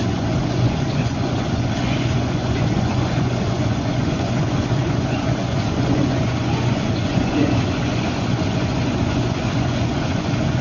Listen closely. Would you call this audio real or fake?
fake